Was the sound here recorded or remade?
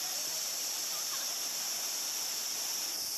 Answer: recorded